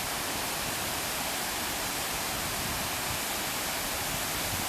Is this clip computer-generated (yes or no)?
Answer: no